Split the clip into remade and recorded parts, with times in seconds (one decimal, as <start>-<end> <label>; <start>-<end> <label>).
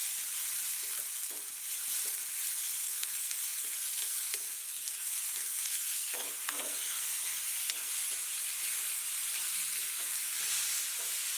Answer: 0.0-2.8 recorded; 2.8-7.9 remade; 7.9-9.4 recorded; 9.4-10.4 remade; 10.4-11.4 recorded